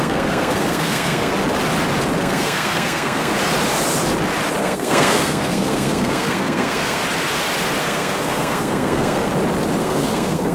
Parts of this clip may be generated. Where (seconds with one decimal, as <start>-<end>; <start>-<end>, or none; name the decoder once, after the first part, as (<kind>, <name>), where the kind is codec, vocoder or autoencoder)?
0.0-1.3 (codec, SNAC); 2.2-3.3; 4.6-7.0; 7.8-9.3; 9.8-10.5